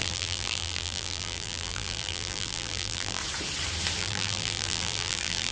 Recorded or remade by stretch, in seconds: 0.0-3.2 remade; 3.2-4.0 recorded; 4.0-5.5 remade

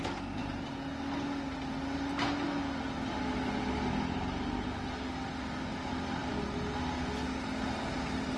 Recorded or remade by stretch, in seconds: 0.0-8.4 recorded

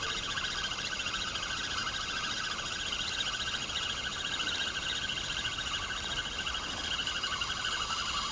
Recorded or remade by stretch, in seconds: 0.0-8.3 recorded

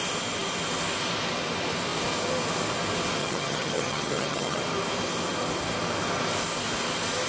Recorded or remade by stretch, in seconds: 0.0-3.2 recorded; 3.2-4.6 remade; 4.6-7.3 recorded

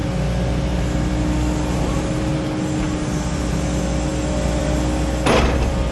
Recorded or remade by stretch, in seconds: 0.0-5.9 recorded